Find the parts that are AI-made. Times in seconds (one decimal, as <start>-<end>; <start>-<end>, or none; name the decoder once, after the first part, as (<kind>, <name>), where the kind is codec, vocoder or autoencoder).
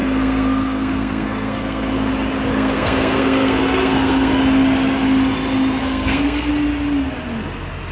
0.0-2.1 (codec, SNAC); 2.5-4.4; 5.8-6.5